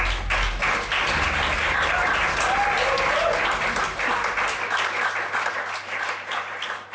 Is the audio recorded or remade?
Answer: recorded